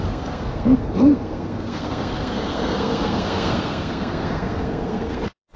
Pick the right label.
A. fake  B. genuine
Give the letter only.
A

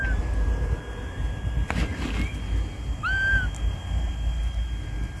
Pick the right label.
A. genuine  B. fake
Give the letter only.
A